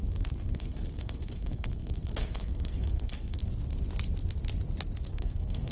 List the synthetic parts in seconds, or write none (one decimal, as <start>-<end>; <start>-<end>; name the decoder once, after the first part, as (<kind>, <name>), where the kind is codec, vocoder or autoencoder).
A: 0.0-3.4 (codec, SNAC); 5.1-5.7